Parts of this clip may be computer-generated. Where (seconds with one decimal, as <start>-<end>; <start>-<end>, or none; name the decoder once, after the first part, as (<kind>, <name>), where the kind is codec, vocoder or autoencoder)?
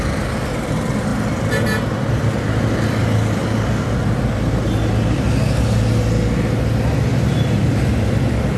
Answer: none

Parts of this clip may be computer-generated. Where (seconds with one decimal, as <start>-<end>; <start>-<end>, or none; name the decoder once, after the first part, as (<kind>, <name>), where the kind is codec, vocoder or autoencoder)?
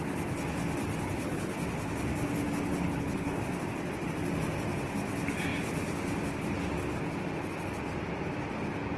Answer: 1.0-1.5 (codec, HILCodec); 2.7-3.4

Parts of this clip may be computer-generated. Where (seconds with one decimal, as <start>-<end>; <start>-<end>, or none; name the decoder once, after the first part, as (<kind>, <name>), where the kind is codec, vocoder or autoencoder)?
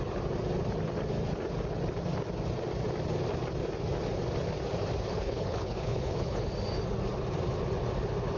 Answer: 5.1-6.4 (codec, HILCodec)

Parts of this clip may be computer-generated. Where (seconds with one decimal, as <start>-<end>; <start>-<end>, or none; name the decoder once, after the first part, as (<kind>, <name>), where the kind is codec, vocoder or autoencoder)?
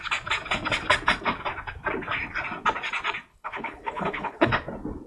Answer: 3.3-4.5 (codec, HILCodec)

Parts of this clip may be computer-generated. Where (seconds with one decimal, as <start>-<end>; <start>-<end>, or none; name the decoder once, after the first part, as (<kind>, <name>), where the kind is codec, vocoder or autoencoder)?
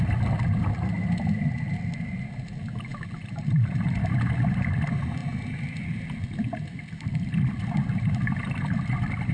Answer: none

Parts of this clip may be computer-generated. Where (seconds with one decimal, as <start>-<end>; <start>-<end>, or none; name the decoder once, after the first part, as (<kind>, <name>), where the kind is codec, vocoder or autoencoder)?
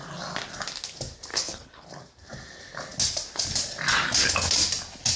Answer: 1.3-2.0 (codec, HILCodec)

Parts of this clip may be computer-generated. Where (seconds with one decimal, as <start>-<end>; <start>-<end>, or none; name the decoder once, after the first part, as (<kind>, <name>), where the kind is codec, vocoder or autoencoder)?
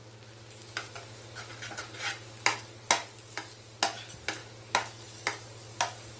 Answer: none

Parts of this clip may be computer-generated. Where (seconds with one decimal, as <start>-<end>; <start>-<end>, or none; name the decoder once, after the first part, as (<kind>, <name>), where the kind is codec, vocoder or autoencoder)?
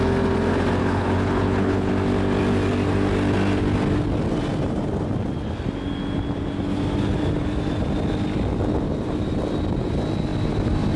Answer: 0.8-1.9 (codec, HILCodec)